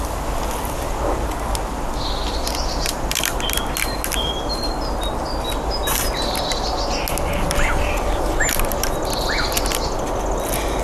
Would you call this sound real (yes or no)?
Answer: yes